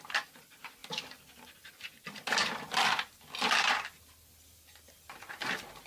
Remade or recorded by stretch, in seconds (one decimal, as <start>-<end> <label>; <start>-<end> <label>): 0.0-5.9 recorded